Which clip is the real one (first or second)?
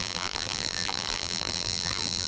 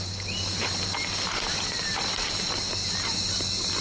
second